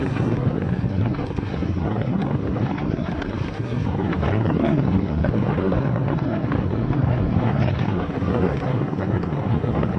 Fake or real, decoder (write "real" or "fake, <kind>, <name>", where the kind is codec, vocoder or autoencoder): fake, codec, SNAC